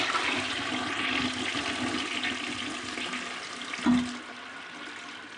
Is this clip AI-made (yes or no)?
no